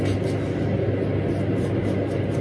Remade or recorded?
recorded